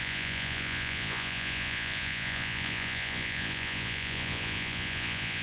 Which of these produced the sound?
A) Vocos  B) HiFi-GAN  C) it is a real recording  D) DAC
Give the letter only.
A